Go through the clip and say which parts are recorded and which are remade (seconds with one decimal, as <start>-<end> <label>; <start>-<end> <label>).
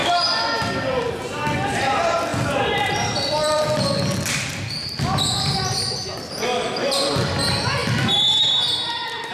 0.0-9.3 recorded